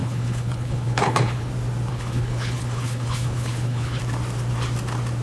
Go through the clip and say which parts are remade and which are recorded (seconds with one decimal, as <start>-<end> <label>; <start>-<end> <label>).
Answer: 0.0-1.5 remade; 1.5-1.9 recorded; 1.9-4.0 remade; 4.0-5.2 recorded